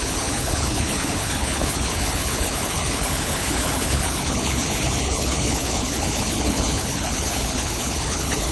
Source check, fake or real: fake